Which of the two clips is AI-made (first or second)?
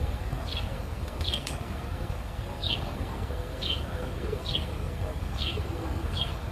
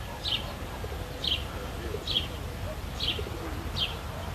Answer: first